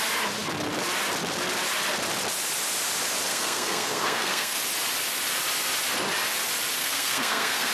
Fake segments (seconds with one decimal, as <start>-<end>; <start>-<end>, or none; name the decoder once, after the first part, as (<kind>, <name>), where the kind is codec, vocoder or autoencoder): 3.3-4.6 (codec, SNAC); 6.8-7.7